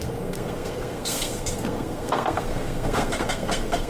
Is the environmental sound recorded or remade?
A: remade